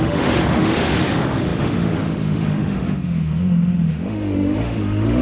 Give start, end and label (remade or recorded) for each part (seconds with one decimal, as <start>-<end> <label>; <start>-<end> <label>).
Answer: 0.0-5.2 remade